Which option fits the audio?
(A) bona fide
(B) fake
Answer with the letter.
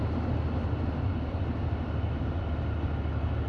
A